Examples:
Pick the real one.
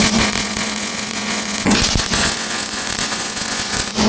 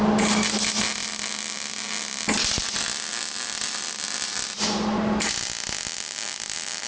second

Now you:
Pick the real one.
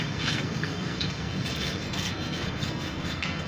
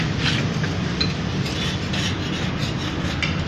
second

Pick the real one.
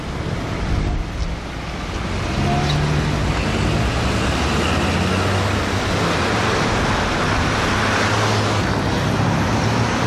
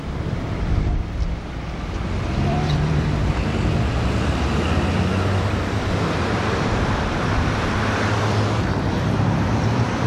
first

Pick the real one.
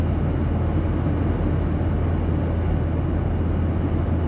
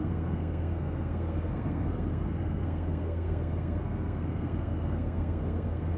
first